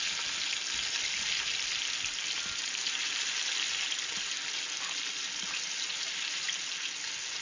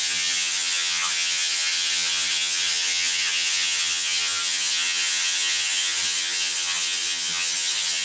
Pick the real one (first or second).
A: first